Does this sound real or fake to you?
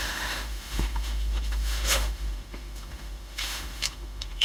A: fake